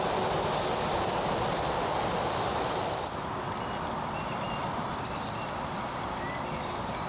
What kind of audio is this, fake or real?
real